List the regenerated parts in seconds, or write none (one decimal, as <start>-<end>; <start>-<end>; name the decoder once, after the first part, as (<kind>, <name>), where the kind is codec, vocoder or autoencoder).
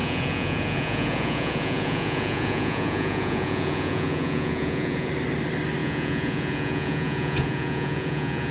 0.0-5.1 (vocoder, Vocos); 5.8-8.5